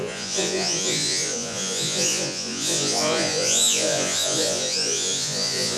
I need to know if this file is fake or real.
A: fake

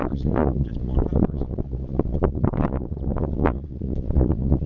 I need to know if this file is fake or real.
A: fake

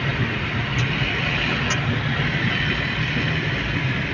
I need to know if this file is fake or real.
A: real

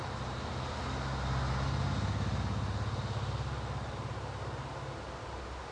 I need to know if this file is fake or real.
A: real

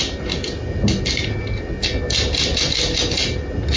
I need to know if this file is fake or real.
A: real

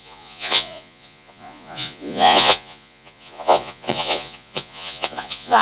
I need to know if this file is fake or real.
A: fake